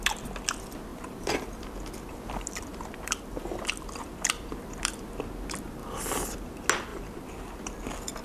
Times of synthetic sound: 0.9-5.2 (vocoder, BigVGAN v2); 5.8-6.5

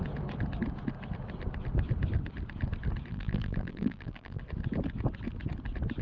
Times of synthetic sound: 3.1-4.4 (vocoder, BigVGAN v2)

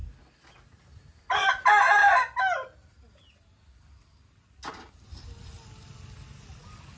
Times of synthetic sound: none